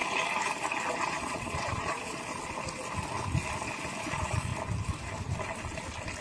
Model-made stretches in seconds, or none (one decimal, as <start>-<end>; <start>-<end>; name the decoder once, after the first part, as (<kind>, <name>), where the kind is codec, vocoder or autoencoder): 0.9-2.3 (vocoder, Vocos); 4.0-4.5